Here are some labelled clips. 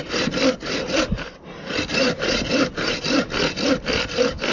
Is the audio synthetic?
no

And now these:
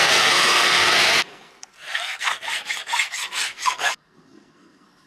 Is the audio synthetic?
yes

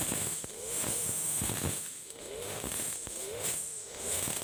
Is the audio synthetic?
yes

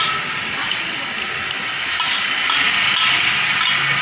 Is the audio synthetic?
no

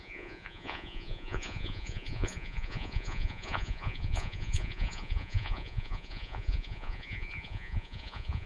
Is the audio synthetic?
yes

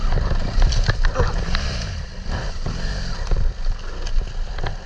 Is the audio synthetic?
no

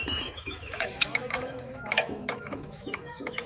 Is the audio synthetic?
yes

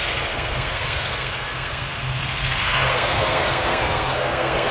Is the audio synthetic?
yes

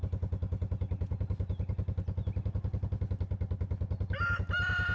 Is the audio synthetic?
no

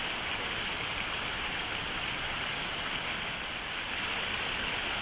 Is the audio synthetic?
no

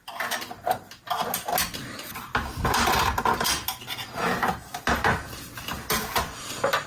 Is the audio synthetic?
no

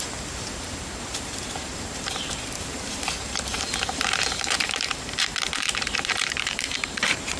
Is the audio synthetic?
yes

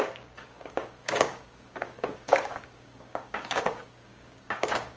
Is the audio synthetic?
yes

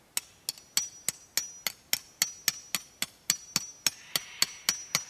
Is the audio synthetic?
no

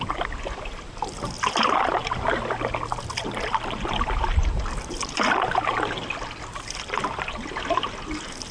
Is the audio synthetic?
no